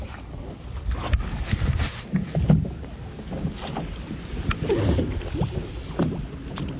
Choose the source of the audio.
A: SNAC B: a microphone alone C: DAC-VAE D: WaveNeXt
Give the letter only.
B